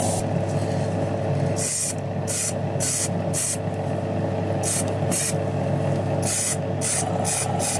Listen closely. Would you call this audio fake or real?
real